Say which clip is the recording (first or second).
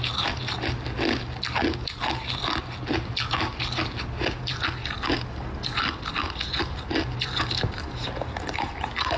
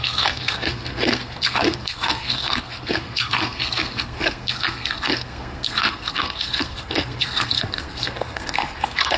first